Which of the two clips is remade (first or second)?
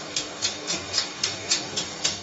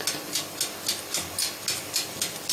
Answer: first